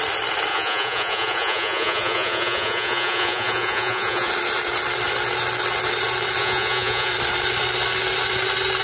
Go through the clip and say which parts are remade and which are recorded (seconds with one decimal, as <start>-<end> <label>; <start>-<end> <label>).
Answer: 0.0-0.5 recorded; 0.5-4.3 remade; 4.3-6.4 recorded; 6.4-7.1 remade; 7.1-8.8 recorded